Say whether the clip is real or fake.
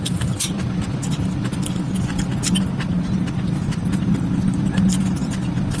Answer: real